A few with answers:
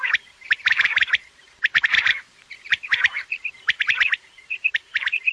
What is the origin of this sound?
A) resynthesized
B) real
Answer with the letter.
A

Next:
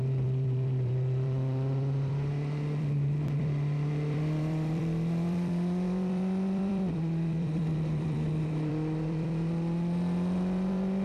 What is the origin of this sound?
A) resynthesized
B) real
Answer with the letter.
A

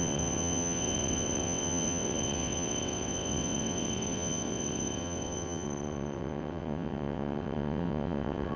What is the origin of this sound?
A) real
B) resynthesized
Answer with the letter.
B